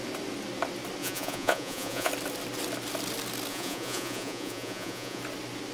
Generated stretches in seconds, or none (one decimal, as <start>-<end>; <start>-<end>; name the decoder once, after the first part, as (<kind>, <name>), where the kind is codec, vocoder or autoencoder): 1.0-2.1 (vocoder, Vocos); 3.5-5.2